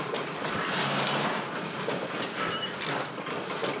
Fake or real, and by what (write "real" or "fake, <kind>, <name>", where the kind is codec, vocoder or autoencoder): real